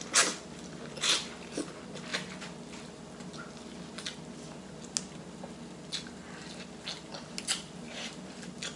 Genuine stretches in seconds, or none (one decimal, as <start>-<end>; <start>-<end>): 0.0-8.8

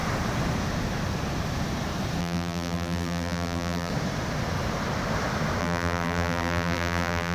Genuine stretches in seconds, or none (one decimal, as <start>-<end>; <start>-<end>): 0.0-2.2; 3.9-5.6

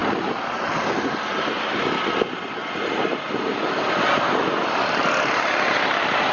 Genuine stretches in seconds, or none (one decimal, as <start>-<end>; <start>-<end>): 0.0-2.6; 3.2-6.3

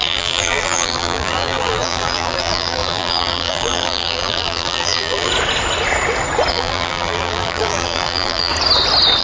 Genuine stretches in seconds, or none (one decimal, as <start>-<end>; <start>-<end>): 5.3-6.5; 8.5-9.2

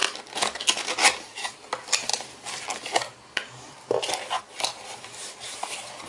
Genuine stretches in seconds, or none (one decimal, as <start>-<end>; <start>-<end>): 0.0-1.1; 2.1-4.4

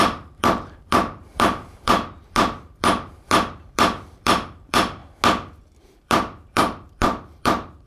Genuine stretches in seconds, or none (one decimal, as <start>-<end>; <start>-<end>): 5.0-5.8

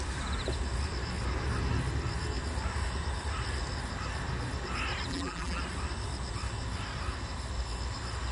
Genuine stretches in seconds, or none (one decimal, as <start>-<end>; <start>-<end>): 0.0-5.1; 5.6-8.3